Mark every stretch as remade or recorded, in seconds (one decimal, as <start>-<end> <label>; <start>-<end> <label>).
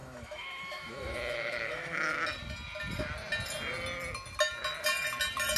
0.0-2.1 remade; 2.1-5.6 recorded